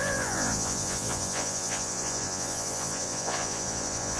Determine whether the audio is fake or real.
fake